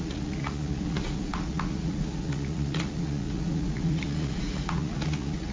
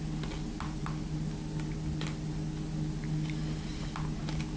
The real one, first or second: second